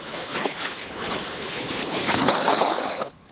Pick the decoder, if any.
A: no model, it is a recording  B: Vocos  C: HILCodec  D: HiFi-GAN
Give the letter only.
C